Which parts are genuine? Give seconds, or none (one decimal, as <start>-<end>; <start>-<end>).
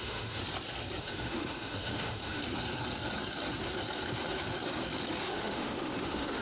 0.4-1.0; 2.4-5.2